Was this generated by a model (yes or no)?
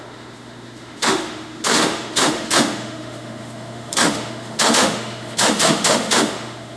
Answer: yes